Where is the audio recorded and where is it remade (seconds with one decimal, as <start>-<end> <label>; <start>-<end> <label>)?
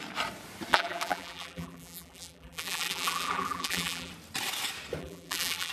0.0-0.7 recorded; 0.7-4.1 remade; 4.1-5.0 recorded; 5.0-5.7 remade